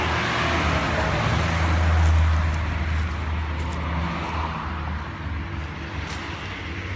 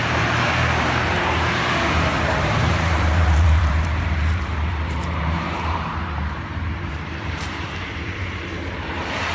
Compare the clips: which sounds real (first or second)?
first